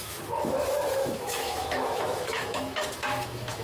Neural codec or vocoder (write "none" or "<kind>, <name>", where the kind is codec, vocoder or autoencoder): autoencoder, DAC-VAE